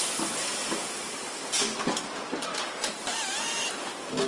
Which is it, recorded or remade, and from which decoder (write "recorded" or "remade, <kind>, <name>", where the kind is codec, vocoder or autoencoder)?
recorded